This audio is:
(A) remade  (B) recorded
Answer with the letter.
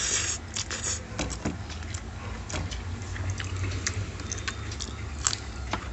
B